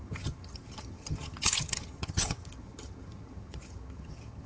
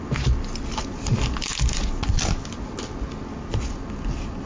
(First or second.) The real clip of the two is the second